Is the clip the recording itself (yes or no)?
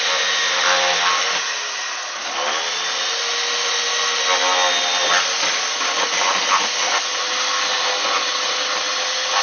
yes